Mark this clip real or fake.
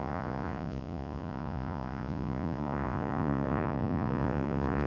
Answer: fake